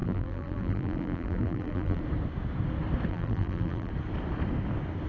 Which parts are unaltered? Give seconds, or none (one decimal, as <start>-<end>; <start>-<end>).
2.0-3.1; 3.9-5.1